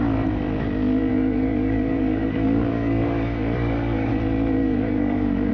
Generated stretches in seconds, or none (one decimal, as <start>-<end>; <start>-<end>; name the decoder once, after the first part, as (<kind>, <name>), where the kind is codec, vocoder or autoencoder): 1.1-4.1 (codec, DAC); 4.6-5.5